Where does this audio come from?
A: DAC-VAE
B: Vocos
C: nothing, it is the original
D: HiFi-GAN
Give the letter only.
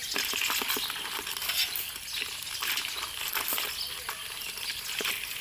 C